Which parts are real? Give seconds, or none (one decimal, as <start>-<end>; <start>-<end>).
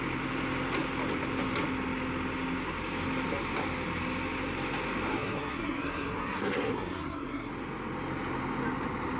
0.0-5.1; 7.5-9.2